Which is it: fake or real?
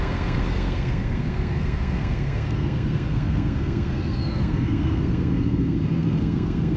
fake